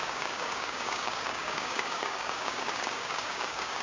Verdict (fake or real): fake